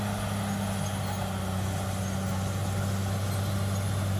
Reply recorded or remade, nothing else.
recorded